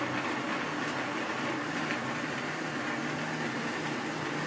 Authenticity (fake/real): real